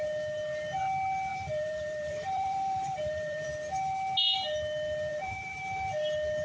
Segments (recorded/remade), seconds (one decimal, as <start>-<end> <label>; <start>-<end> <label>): 0.0-1.3 recorded; 1.3-3.5 remade; 3.5-5.1 recorded; 5.1-5.6 remade; 5.6-6.4 recorded